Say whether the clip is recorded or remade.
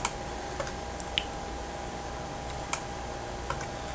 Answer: recorded